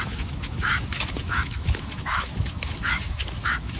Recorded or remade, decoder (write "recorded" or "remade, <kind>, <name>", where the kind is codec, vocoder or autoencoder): remade, autoencoder, DAC-VAE